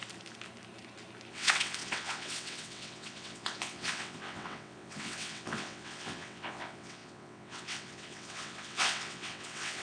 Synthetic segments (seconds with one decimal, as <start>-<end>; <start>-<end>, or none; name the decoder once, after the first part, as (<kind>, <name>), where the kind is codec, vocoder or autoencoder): 1.3-9.8 (vocoder, WaveNeXt)